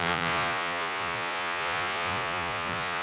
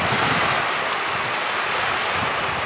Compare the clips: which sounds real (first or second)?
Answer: second